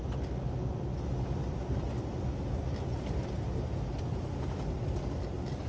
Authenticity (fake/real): real